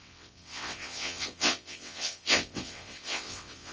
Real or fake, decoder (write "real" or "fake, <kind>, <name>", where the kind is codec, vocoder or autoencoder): fake, vocoder, WaveNeXt